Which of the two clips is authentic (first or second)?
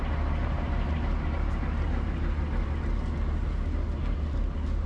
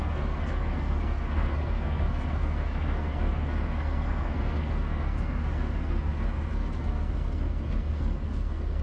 first